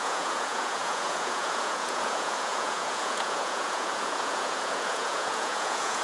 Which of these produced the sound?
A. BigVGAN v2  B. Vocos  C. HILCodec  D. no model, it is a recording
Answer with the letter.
B